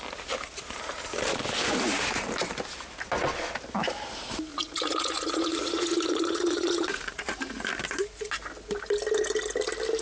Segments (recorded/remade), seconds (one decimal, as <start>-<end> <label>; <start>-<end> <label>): 0.0-4.5 recorded; 4.5-7.3 remade; 7.3-10.0 recorded